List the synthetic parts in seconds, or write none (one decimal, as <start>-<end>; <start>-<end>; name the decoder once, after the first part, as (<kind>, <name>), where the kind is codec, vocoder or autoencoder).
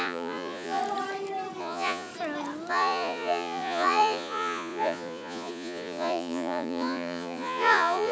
0.0-0.8 (vocoder, Vocos); 1.6-2.1; 2.7-8.1